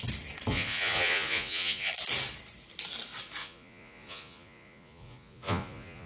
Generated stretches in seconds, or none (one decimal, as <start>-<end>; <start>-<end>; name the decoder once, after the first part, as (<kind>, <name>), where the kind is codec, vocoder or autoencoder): 0.5-1.9 (vocoder, Vocos); 3.4-6.1